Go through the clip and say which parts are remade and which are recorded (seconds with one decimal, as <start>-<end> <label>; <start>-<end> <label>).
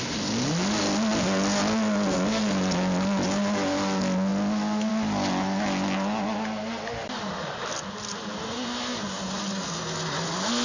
0.0-10.6 recorded